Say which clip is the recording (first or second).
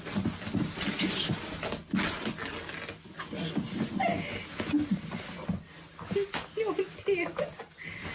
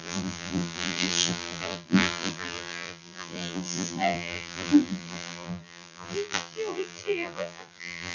first